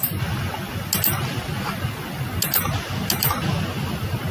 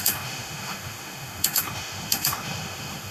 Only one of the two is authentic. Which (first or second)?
first